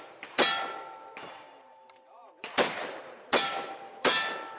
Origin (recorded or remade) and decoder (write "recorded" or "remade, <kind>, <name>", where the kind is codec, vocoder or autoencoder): remade, vocoder, BigVGAN v2